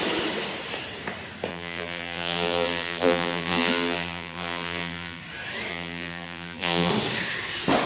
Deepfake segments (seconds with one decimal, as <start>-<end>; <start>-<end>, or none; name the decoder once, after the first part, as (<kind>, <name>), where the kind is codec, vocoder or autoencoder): 1.5-5.2 (vocoder, BigVGAN v2); 5.7-6.9